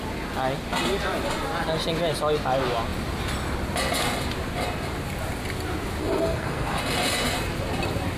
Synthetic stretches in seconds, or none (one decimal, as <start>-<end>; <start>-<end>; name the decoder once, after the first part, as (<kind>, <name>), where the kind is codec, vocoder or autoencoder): 6.0-6.8 (codec, SNAC)